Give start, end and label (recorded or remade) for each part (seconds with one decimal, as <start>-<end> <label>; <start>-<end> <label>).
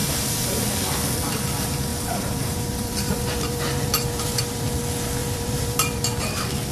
0.0-0.6 remade; 0.6-1.9 recorded; 1.9-4.8 remade; 4.8-5.2 recorded; 5.2-6.0 remade; 6.0-6.7 recorded